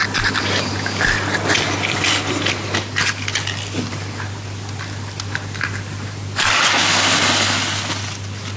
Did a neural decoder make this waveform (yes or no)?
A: no